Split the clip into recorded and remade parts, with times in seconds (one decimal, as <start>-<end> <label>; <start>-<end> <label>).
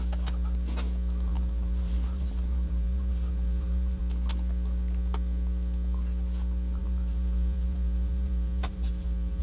0.0-1.3 recorded; 1.3-4.0 remade; 4.0-6.8 recorded; 6.8-9.4 remade